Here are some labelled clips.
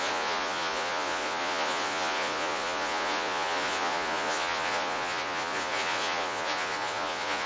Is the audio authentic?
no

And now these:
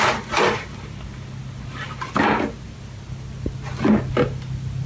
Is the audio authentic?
yes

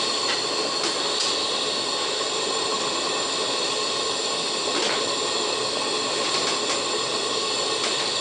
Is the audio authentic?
yes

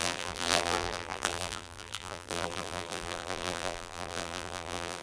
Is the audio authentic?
no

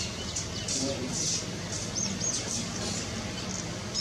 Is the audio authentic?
yes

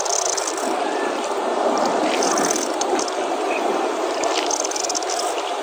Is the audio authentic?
no